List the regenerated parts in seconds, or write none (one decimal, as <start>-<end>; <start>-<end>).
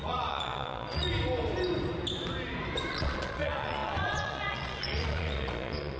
0.0-1.1; 2.9-6.0